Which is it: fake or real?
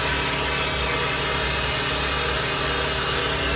real